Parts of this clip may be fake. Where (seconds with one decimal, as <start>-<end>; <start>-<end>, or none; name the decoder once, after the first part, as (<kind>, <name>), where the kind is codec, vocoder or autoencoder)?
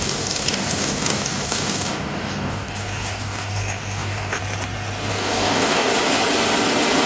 0.0-4.4 (codec, DAC); 5.1-5.9